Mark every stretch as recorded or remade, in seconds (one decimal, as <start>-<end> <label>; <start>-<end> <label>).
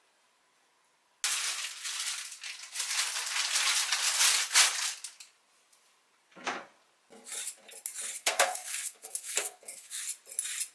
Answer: 0.0-8.2 recorded; 8.2-10.0 remade; 10.0-10.7 recorded